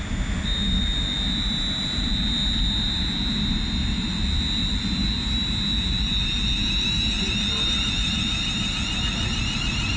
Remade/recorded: recorded